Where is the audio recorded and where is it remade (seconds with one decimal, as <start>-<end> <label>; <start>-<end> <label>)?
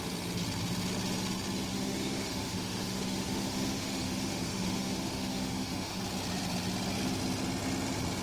0.0-1.7 recorded; 1.7-6.0 remade; 6.0-8.2 recorded